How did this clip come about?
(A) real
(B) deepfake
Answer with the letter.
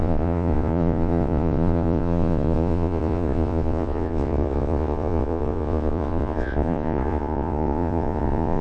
B